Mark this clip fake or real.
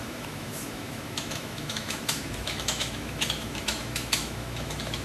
fake